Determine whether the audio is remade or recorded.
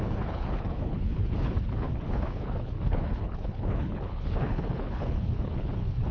remade